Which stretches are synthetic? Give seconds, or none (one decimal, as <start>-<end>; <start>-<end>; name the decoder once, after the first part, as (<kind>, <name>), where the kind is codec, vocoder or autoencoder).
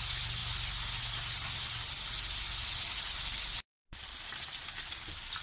none